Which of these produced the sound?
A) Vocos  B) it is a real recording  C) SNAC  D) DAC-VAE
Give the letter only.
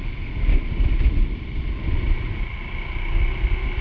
B